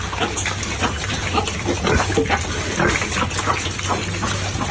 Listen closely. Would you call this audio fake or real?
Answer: real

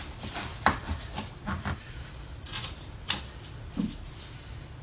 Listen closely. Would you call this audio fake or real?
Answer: real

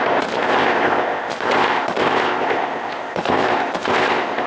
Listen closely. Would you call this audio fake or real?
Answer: fake